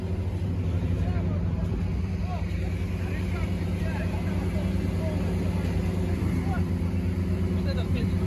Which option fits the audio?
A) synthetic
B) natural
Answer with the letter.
B